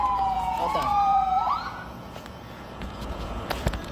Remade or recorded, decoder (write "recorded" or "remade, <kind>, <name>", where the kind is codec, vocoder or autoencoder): remade, vocoder, Vocos